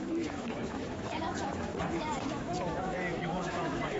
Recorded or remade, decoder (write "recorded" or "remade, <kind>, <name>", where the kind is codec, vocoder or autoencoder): remade, autoencoder, DAC-VAE